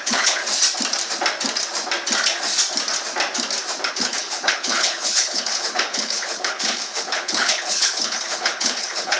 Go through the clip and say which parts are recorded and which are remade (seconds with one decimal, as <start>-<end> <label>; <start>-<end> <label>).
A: 0.0-0.4 remade; 0.4-3.9 recorded; 3.9-9.2 remade